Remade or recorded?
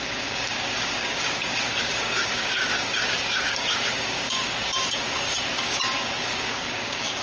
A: remade